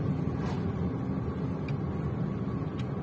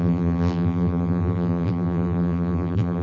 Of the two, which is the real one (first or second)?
first